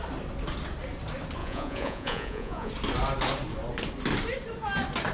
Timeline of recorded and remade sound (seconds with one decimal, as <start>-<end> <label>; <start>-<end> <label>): 0.0-1.4 recorded; 1.4-2.7 remade; 2.7-5.1 recorded